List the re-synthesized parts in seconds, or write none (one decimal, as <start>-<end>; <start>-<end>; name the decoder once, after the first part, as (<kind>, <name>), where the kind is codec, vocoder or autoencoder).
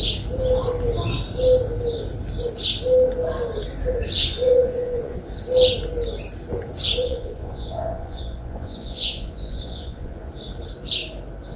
4.2-5.2 (vocoder, Vocos); 7.0-10.3